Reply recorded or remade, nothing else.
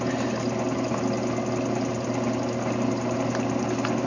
recorded